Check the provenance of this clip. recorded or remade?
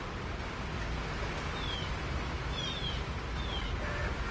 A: recorded